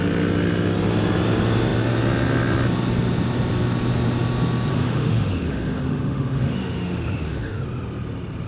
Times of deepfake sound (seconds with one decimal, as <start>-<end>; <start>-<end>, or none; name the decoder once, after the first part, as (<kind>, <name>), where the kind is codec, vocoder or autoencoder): 4.7-7.6 (autoencoder, DAC-VAE)